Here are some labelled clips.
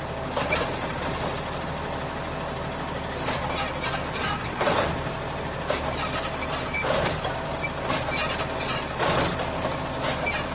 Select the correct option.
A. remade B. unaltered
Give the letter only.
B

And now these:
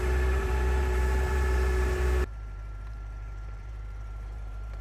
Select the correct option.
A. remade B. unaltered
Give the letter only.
A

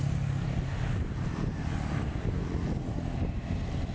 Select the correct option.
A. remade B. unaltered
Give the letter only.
B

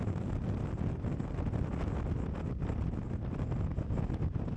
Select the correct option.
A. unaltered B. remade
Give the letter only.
A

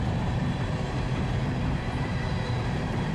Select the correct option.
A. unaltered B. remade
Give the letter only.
B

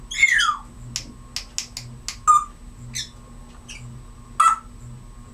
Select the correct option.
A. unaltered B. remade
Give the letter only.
A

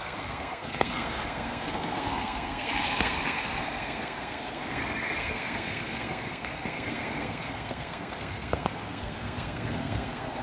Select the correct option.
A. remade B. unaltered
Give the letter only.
A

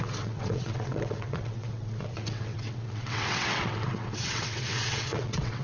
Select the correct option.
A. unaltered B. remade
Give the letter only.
B